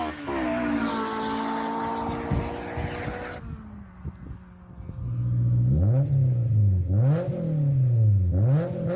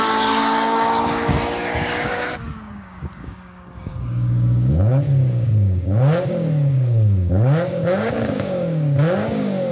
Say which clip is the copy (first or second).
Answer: second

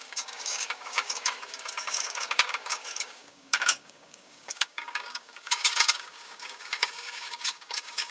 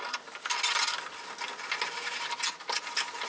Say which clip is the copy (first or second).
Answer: first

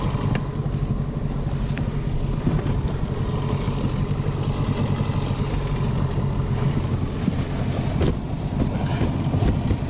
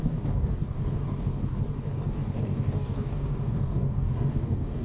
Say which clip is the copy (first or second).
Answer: second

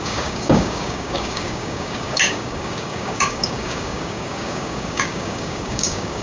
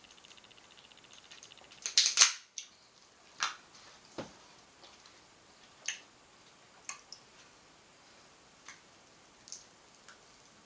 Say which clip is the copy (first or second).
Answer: first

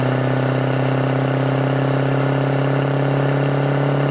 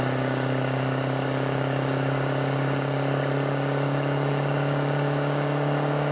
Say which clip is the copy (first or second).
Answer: second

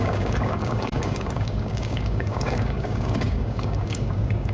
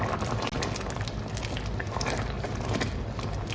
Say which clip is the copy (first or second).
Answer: first